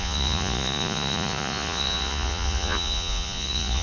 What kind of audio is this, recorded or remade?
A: remade